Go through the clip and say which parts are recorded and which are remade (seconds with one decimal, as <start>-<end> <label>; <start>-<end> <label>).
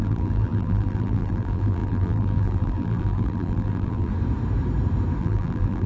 0.0-4.1 remade; 4.1-5.2 recorded; 5.2-5.9 remade